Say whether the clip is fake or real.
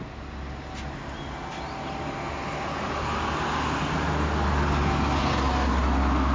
real